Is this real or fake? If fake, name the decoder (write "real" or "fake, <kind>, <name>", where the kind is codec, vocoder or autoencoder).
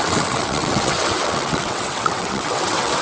fake, vocoder, WaveNeXt